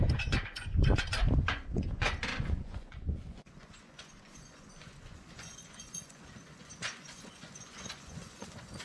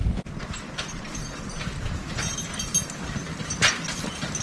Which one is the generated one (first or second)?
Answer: first